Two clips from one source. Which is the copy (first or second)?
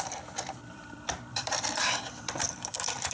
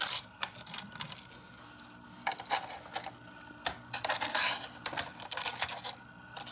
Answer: first